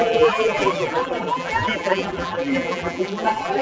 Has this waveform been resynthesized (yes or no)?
yes